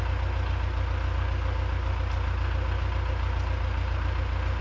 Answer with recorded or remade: recorded